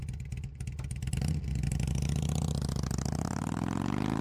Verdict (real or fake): real